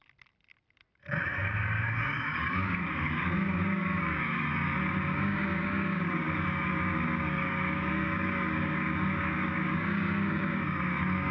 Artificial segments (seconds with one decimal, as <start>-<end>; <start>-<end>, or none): 1.3-4.5; 5.1-11.3